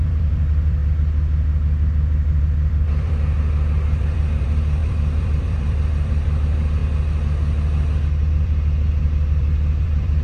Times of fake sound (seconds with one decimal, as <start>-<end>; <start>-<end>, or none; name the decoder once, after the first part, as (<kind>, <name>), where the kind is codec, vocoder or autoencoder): 0.0-0.8 (vocoder, BigVGAN v2); 2.4-6.8; 8.3-10.2